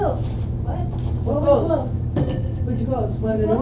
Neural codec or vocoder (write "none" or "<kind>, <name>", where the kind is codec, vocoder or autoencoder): vocoder, BigVGAN v2